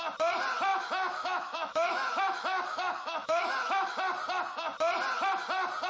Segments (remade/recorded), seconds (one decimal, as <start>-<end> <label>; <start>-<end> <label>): 0.0-0.7 recorded; 0.7-4.0 remade; 4.0-5.9 recorded